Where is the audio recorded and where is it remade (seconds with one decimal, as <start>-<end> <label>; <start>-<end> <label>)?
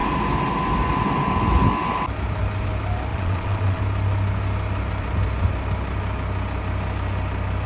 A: 0.0-3.1 recorded; 3.1-3.8 remade; 3.8-7.7 recorded